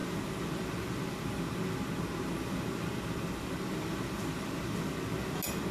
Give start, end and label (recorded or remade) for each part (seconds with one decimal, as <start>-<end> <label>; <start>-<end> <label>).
0.0-5.7 recorded